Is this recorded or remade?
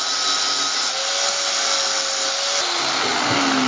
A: recorded